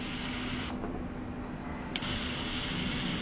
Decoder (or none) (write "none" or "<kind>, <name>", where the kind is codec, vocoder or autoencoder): none